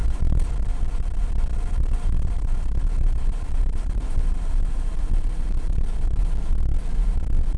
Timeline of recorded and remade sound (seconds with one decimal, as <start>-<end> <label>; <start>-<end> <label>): 0.0-0.7 remade; 0.7-1.5 recorded; 1.5-6.1 remade; 6.1-7.6 recorded